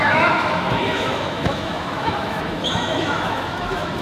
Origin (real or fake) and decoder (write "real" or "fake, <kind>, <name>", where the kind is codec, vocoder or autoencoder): fake, autoencoder, DAC-VAE